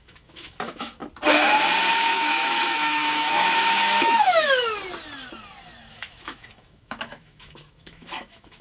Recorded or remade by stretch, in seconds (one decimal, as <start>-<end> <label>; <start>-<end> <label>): 0.0-1.0 remade; 1.0-1.9 recorded; 1.9-4.6 remade; 4.6-5.9 recorded; 5.9-8.6 remade